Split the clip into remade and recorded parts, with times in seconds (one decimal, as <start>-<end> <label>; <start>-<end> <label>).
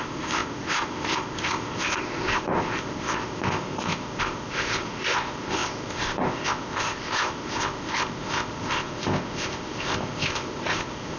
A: 0.0-11.2 remade